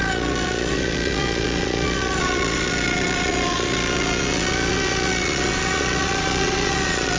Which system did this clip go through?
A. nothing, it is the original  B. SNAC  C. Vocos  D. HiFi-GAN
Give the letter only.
C